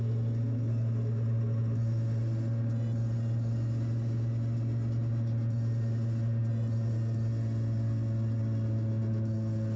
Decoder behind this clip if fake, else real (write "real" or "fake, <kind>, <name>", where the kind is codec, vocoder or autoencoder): real